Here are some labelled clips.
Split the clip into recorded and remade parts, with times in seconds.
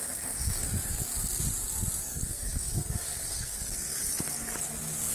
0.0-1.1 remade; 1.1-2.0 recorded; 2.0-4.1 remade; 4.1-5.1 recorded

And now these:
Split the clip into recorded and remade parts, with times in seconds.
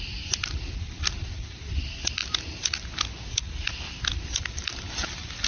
0.0-5.5 recorded